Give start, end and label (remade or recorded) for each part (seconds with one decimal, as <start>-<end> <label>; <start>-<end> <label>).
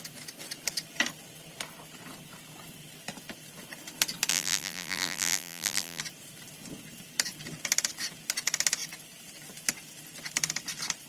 0.0-4.3 recorded; 4.3-6.0 remade; 6.0-11.1 recorded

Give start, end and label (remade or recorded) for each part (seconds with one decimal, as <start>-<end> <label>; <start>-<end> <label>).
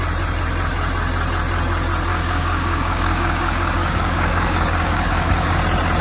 0.0-2.1 recorded; 2.1-5.6 remade; 5.6-6.0 recorded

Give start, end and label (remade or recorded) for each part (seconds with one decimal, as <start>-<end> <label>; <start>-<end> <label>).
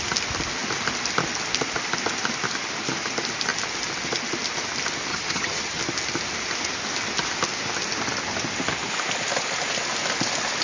0.0-5.1 recorded; 5.1-5.8 remade; 5.8-10.6 recorded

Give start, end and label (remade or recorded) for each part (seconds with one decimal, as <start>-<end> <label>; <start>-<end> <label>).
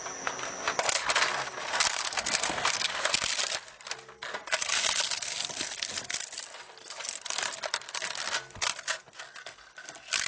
0.0-2.0 recorded; 2.0-2.7 remade; 2.7-10.3 recorded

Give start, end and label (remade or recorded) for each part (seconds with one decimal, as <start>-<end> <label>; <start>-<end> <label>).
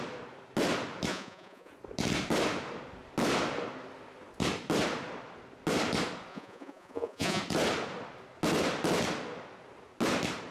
0.0-1.1 recorded; 1.1-1.7 remade; 1.7-6.3 recorded; 6.3-7.4 remade; 7.4-10.5 recorded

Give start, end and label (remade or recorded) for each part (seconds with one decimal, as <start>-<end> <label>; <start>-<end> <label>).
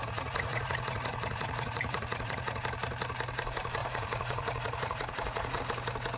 0.0-2.6 remade; 2.6-3.8 recorded; 3.8-5.6 remade; 5.6-6.2 recorded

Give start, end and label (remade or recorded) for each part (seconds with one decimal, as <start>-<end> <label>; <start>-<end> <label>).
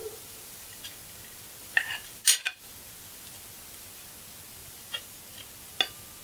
0.0-0.8 remade; 0.8-1.6 recorded; 1.6-2.6 remade; 2.6-4.6 recorded; 4.6-5.2 remade; 5.2-6.2 recorded